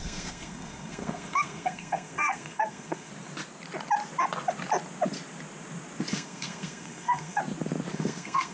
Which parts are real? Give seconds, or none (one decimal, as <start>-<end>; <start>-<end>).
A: 3.1-6.1; 7.4-7.9